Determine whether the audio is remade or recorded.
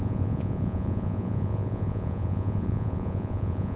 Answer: remade